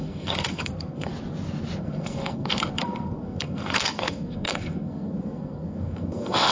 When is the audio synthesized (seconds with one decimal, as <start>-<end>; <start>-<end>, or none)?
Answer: 0.0-1.1; 1.8-6.5